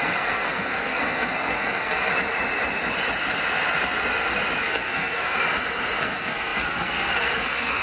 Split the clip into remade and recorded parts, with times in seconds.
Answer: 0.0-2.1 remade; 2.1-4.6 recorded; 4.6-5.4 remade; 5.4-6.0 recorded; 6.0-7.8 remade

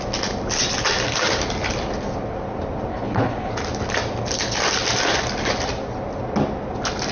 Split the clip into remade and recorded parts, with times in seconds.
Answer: 0.0-2.9 recorded; 2.9-3.5 remade; 3.5-7.1 recorded

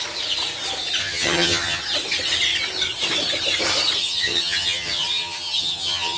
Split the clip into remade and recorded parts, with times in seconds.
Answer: 0.0-1.0 recorded; 1.0-1.8 remade; 1.8-4.0 recorded; 4.0-6.2 remade